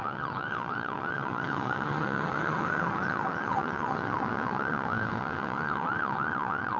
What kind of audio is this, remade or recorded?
remade